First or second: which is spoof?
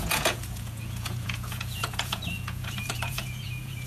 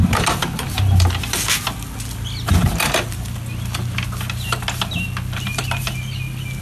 first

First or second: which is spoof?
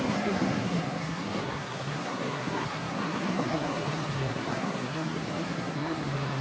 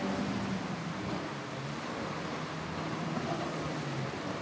first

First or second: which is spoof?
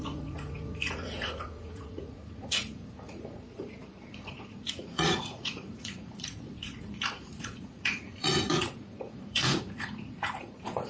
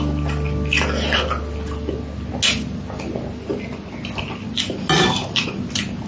first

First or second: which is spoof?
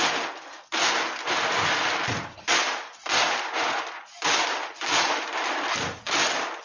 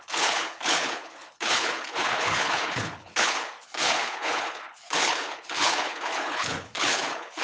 second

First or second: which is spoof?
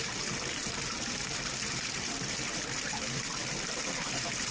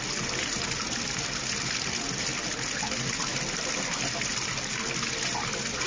first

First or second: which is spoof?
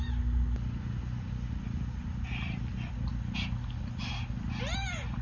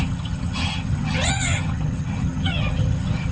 second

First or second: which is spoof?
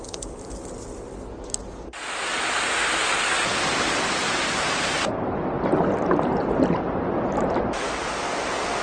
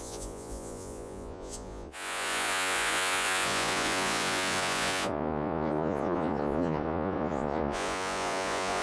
second